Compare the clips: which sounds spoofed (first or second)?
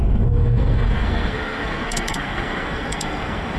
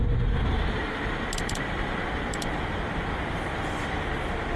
first